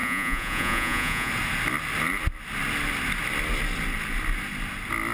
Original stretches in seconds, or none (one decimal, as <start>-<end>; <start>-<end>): 1.3-5.1